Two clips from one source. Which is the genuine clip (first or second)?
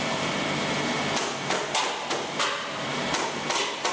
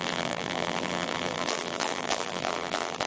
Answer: first